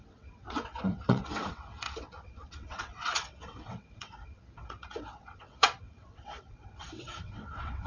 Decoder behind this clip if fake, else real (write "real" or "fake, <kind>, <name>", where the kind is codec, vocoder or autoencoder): fake, vocoder, WaveNeXt